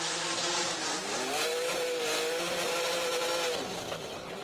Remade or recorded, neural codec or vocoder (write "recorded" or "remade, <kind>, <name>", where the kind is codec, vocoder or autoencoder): recorded